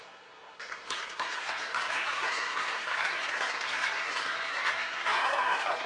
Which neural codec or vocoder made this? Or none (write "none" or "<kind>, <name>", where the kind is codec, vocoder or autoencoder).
codec, SNAC